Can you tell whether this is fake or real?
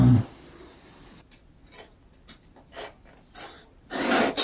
real